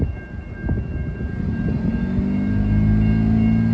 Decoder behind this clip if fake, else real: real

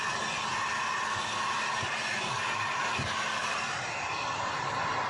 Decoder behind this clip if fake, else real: real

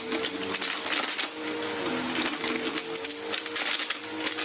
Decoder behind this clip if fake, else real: real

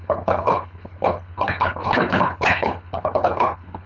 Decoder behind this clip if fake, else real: fake, codec, HILCodec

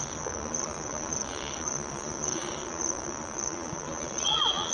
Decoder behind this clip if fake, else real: fake, vocoder, Vocos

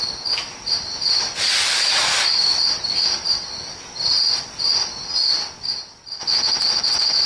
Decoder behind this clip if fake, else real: real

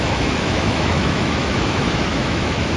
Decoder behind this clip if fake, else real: fake, autoencoder, DAC-VAE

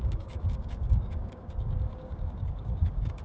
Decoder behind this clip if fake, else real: fake, codec, DAC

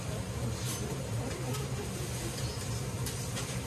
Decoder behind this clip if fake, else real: real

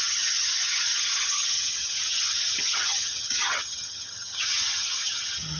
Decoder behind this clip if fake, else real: fake, vocoder, HiFi-GAN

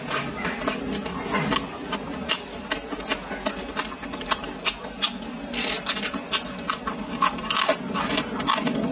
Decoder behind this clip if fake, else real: real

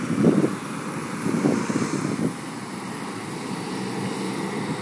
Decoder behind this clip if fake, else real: real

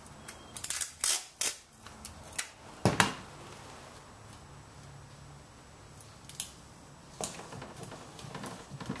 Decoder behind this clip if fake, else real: real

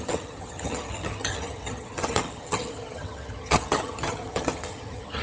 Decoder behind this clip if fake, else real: fake, vocoder, HiFi-GAN